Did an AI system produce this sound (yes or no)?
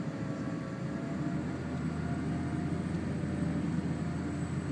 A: no